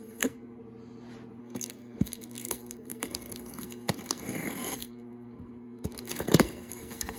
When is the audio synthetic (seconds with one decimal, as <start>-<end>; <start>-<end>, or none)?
0.0-0.6; 1.4-7.2